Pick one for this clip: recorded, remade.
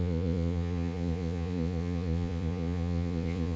remade